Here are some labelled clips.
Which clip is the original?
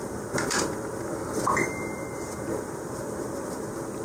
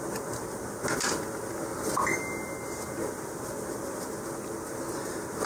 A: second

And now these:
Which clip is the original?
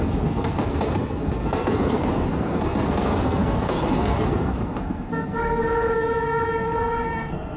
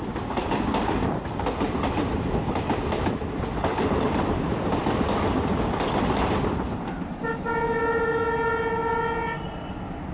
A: second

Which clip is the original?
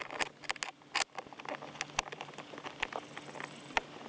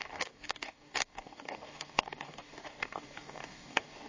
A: first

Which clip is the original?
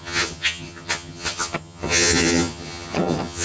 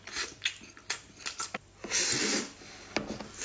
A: second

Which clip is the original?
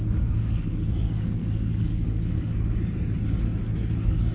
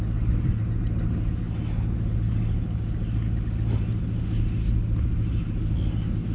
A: second